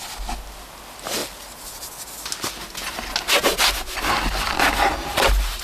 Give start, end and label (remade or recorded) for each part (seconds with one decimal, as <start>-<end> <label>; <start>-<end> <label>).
0.0-5.1 recorded; 5.1-5.6 remade